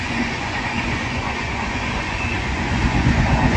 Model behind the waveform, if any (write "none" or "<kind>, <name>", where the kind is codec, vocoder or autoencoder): vocoder, Vocos